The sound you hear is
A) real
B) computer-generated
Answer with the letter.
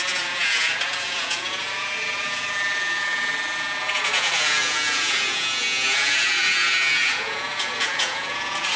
B